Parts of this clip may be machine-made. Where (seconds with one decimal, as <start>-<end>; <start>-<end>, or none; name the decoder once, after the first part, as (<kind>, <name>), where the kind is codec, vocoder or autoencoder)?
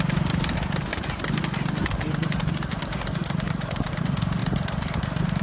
3.2-3.9 (vocoder, BigVGAN v2); 4.4-5.4